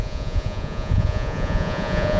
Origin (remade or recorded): remade